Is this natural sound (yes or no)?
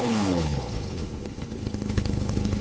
no